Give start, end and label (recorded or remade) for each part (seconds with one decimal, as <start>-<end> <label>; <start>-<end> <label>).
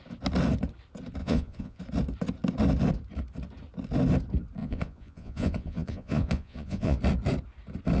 0.0-1.2 recorded; 1.2-1.8 remade; 1.8-4.6 recorded; 4.6-7.0 remade; 7.0-8.0 recorded